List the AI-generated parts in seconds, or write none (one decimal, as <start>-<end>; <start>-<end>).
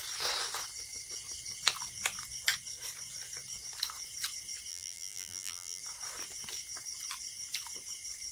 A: 4.7-5.8